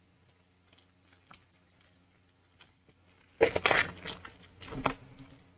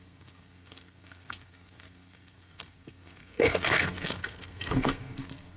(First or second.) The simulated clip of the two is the second